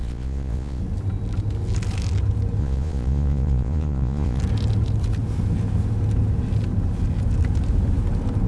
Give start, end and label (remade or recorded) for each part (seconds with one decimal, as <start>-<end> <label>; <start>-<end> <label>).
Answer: 0.0-0.8 remade; 0.8-2.6 recorded; 2.6-4.4 remade; 4.4-8.5 recorded